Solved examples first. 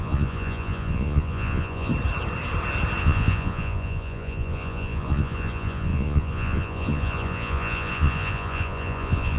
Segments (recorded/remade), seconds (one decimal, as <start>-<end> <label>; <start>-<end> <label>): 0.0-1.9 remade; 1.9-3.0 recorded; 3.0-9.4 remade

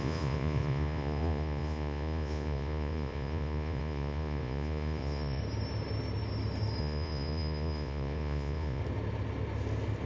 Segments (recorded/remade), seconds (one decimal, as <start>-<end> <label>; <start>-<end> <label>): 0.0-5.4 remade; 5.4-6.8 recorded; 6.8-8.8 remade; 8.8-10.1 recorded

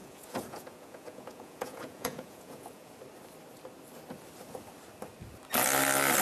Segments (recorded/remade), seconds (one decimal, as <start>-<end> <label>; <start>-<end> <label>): 0.0-2.9 remade; 2.9-6.2 recorded

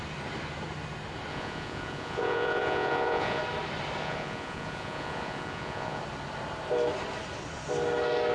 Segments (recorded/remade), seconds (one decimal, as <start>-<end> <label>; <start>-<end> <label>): 0.0-1.3 recorded; 1.3-3.4 remade; 3.4-4.0 recorded; 4.0-6.0 remade; 6.0-8.3 recorded

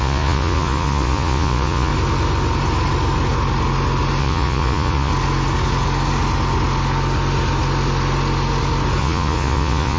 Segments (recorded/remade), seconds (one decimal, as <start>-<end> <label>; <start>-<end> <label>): 0.0-1.9 remade; 1.9-4.2 recorded; 4.2-5.1 remade; 5.1-9.0 recorded; 9.0-10.0 remade